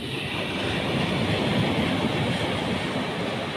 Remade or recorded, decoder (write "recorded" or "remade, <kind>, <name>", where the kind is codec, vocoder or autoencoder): recorded